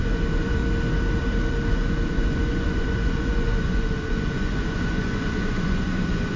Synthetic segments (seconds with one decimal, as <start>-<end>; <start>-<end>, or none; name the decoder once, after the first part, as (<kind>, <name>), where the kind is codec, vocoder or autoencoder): 0.0-0.6 (vocoder, Vocos); 1.7-6.4